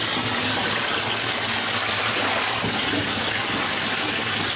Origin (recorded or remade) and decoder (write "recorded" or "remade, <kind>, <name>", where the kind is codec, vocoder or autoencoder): recorded